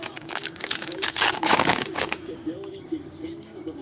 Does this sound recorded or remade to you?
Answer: remade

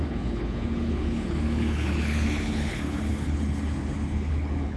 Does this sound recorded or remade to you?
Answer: remade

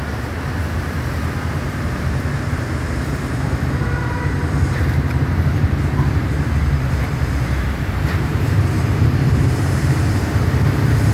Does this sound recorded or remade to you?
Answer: remade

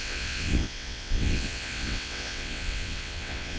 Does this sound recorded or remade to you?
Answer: remade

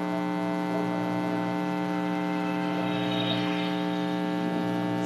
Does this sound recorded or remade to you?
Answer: recorded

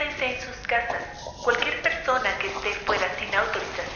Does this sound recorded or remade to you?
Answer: recorded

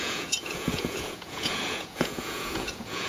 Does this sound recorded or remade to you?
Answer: remade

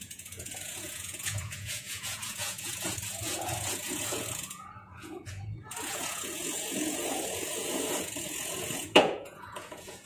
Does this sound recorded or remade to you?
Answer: remade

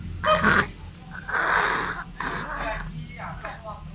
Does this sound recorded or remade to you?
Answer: recorded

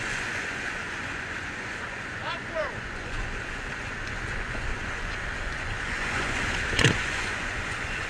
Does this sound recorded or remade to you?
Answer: remade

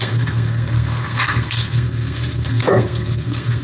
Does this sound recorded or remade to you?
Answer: remade